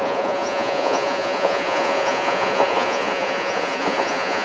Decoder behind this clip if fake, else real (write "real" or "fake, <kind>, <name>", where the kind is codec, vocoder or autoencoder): fake, vocoder, Vocos